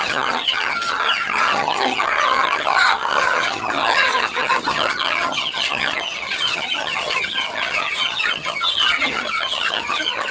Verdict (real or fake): fake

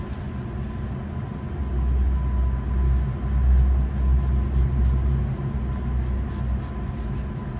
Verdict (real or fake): real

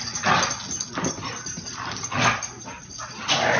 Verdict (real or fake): real